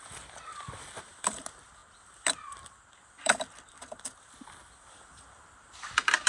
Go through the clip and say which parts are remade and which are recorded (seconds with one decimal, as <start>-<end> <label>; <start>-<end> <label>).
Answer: 0.0-6.3 recorded

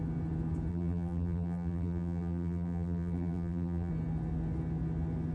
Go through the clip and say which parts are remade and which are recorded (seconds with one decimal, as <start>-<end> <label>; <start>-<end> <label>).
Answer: 0.0-0.7 recorded; 0.7-3.9 remade; 3.9-5.3 recorded

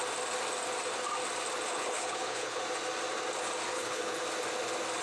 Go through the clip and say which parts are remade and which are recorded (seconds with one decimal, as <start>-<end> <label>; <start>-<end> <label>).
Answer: 0.0-1.7 recorded; 1.7-2.6 remade; 2.6-3.7 recorded; 3.7-4.2 remade; 4.2-5.0 recorded

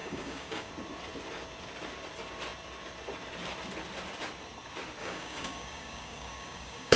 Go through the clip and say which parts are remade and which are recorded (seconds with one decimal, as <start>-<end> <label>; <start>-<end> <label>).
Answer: 0.0-0.7 remade; 0.7-5.0 recorded; 5.0-7.0 remade

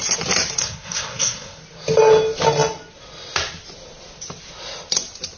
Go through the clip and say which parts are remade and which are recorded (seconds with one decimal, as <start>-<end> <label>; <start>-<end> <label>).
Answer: 0.0-0.6 recorded; 0.6-1.6 remade; 1.6-5.4 recorded